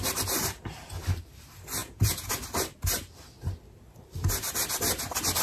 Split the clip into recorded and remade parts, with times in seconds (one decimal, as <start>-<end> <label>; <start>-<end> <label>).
0.0-1.8 recorded; 1.8-2.3 remade; 2.3-5.4 recorded